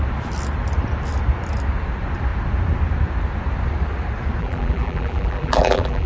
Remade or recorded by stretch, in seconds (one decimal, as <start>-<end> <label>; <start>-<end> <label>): 0.0-4.4 recorded; 4.4-6.1 remade